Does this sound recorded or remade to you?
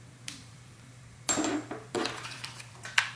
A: remade